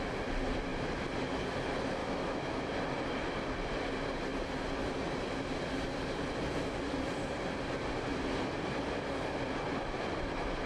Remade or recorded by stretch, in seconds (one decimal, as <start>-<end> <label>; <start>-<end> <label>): 0.0-2.0 recorded; 2.0-2.7 remade; 2.7-10.7 recorded